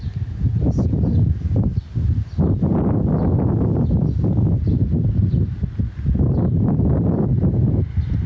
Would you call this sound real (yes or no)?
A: yes